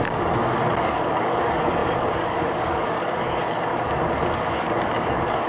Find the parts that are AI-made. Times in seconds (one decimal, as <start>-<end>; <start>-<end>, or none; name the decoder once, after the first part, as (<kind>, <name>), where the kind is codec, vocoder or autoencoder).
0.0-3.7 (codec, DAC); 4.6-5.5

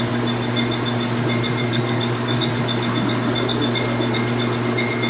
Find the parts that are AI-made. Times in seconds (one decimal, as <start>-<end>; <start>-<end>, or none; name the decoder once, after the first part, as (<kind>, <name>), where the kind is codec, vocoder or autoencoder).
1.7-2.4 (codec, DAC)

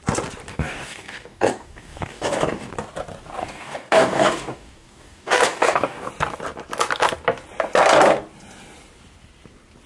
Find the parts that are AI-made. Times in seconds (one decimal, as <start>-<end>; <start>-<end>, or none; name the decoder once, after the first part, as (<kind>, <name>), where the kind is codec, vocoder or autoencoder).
0.5-2.7 (codec, DAC); 3.4-6.1